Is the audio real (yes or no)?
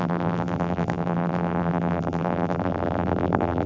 no